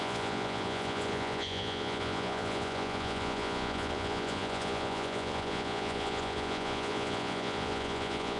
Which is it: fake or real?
fake